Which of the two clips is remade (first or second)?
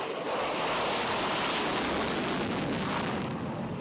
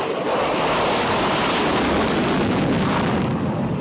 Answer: second